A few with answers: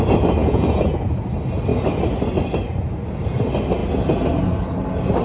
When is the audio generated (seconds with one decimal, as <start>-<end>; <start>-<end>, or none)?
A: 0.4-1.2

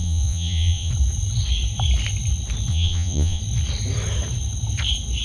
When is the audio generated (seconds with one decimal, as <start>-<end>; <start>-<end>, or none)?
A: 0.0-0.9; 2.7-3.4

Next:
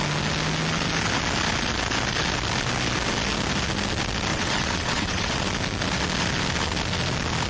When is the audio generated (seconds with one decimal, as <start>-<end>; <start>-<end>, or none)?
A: 4.3-5.4

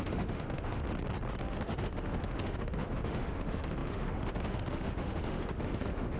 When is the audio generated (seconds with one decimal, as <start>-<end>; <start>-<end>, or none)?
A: 0.0-0.8; 1.4-6.2